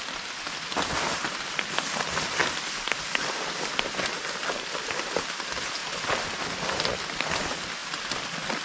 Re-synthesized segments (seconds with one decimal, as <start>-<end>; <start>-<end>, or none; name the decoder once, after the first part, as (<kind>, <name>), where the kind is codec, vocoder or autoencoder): 2.4-4.9 (vocoder, BigVGAN v2); 7.8-8.6